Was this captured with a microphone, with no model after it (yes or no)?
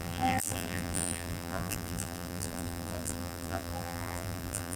no